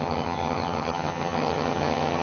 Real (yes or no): no